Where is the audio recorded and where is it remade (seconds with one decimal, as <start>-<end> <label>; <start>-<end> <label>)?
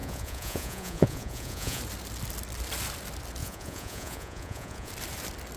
0.0-1.8 remade; 1.8-3.4 recorded; 3.4-4.9 remade; 4.9-5.6 recorded